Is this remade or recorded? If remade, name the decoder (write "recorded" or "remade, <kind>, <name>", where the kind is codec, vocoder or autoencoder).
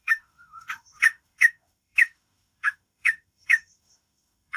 remade, autoencoder, DAC-VAE